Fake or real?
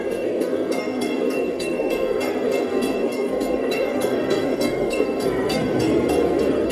fake